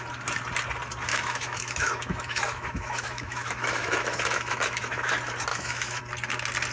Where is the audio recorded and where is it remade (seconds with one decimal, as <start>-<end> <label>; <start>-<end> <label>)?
0.0-1.1 recorded; 1.1-5.1 remade; 5.1-5.5 recorded; 5.5-6.0 remade; 6.0-6.7 recorded